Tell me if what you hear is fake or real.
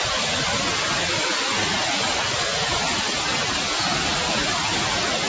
real